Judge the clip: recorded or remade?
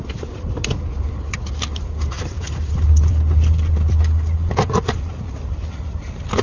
recorded